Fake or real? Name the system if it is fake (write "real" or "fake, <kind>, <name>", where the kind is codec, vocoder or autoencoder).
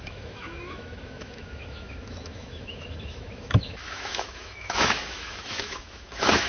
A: fake, autoencoder, DAC-VAE